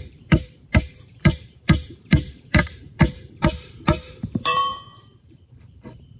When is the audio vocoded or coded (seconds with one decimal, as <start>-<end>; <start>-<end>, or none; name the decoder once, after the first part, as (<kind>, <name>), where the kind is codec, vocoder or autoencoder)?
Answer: 0.0-6.2 (vocoder, BigVGAN v2)